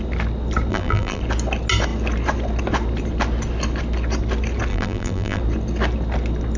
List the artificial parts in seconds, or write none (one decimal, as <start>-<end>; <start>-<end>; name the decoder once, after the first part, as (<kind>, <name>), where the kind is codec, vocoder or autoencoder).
0.7-1.2 (vocoder, BigVGAN v2); 4.7-5.4